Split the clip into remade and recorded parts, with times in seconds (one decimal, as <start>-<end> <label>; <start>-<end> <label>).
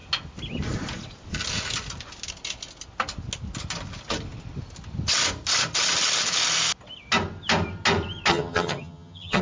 0.0-8.3 recorded; 8.3-9.4 remade